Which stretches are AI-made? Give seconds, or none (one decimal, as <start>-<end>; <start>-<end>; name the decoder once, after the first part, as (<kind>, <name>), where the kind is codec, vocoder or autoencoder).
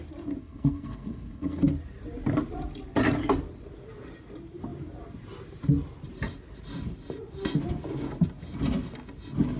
0.4-1.6 (codec, SNAC)